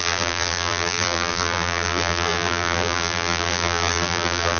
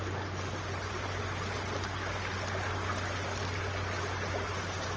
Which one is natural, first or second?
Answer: second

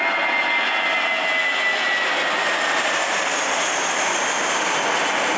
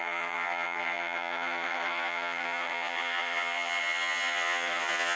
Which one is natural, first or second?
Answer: first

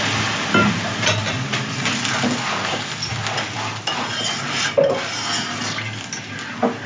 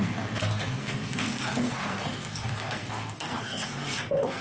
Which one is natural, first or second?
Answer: first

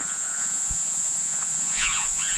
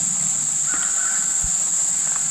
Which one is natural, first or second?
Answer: second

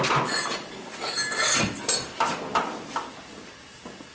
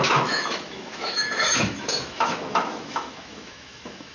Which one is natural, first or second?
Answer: first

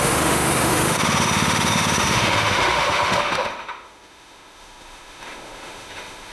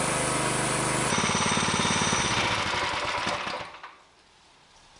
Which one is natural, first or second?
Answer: second